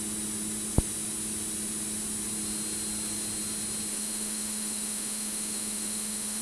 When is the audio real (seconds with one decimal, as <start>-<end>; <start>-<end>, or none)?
0.0-3.9